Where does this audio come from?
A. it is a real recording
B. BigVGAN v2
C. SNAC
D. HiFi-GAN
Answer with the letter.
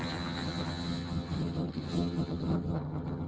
D